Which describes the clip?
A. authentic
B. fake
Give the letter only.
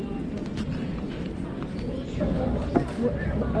A